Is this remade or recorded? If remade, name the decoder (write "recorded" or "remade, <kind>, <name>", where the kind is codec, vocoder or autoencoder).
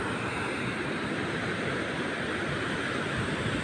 recorded